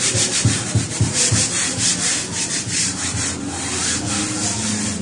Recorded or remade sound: remade